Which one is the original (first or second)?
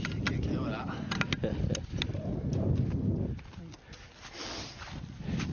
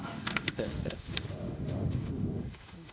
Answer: first